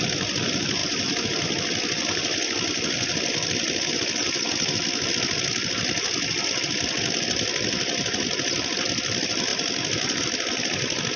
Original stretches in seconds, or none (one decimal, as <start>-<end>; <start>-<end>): 0.0-11.2